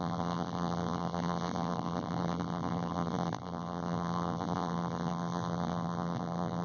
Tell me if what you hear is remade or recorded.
remade